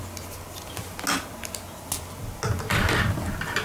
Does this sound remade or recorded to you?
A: recorded